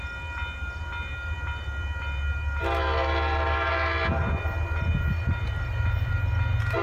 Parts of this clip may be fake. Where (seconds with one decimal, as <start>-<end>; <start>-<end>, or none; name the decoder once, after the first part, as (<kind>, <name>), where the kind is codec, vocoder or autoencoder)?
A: 4.1-6.1 (vocoder, BigVGAN v2)